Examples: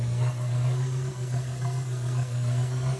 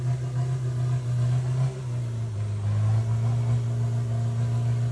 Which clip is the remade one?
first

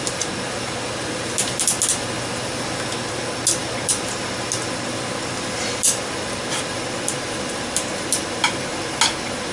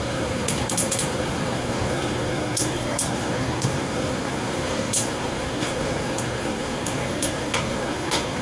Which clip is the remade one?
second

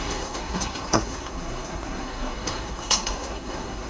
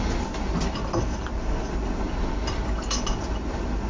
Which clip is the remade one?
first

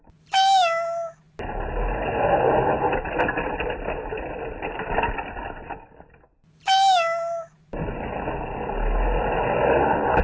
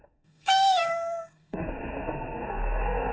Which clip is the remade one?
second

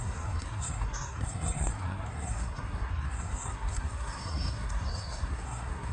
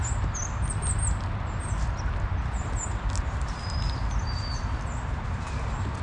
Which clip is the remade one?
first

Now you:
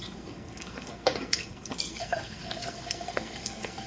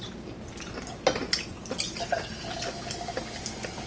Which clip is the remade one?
first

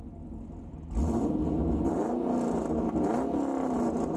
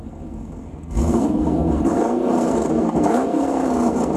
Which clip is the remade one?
second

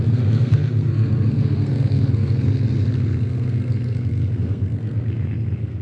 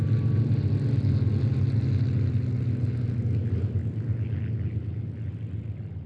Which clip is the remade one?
first